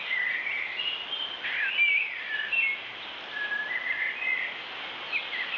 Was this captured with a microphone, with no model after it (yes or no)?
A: yes